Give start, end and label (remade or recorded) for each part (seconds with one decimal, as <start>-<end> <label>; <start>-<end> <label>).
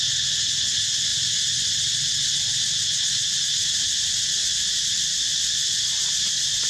0.0-6.7 recorded